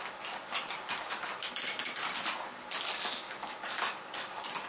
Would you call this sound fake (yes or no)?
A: no